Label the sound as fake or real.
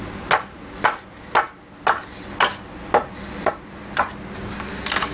real